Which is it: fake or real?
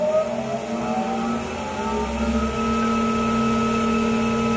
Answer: real